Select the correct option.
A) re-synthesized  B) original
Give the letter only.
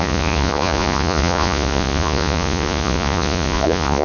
A